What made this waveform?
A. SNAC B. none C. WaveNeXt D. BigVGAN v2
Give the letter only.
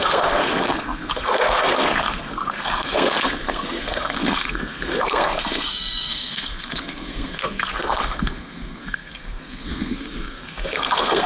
A